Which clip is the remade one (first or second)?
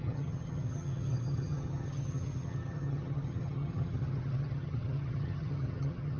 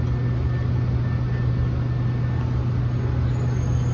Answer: first